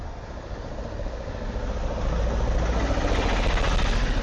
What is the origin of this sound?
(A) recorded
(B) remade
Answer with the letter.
A